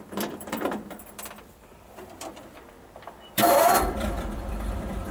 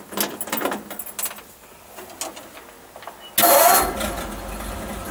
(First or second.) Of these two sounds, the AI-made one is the first